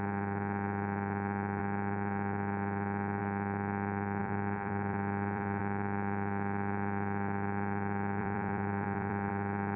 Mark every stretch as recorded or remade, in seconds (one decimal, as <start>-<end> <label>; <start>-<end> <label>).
0.0-4.2 recorded; 4.2-5.6 remade; 5.6-8.2 recorded; 8.2-9.3 remade; 9.3-9.8 recorded